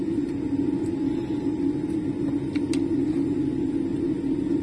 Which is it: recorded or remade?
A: recorded